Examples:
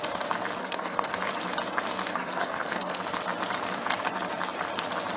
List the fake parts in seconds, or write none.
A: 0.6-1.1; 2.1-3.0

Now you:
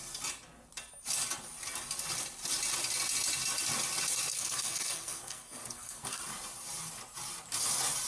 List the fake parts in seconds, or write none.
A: 4.3-6.2

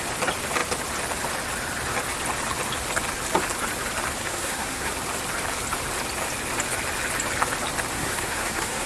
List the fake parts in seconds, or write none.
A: 4.2-4.9; 7.9-8.9

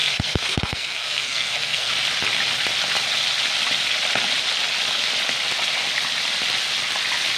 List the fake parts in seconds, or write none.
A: 0.0-1.9

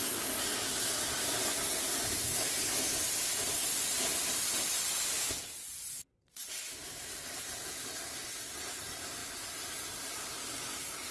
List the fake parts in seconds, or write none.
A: none

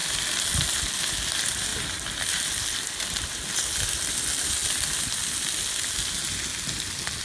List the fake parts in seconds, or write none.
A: none